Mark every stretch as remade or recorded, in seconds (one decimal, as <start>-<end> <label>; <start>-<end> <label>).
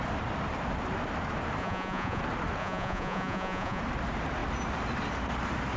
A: 0.0-1.6 recorded; 1.6-2.2 remade; 2.2-2.6 recorded; 2.6-3.8 remade; 3.8-5.8 recorded